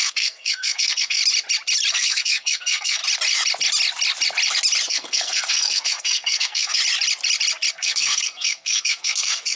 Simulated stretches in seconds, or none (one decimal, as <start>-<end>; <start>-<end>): 0.0-1.2; 1.9-3.0; 4.9-6.8; 7.7-9.6